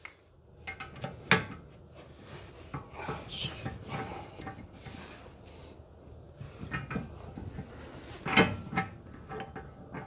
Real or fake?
real